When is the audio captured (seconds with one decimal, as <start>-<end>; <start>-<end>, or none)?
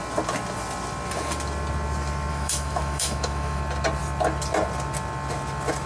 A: 0.0-2.3; 3.6-5.9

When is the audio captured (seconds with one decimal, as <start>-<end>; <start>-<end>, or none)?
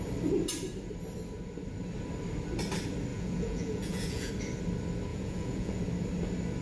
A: 0.0-3.1; 4.3-5.1; 5.8-6.6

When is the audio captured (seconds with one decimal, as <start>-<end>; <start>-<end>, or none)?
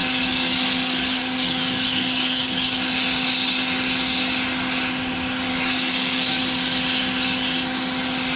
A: 2.9-5.5; 6.4-8.4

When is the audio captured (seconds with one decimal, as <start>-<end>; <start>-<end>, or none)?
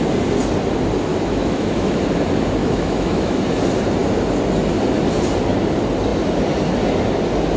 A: 0.0-1.1; 2.0-2.6; 3.4-7.6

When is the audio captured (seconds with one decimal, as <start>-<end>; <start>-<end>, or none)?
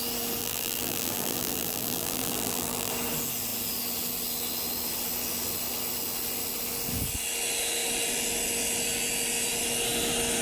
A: 0.0-0.4; 2.9-10.4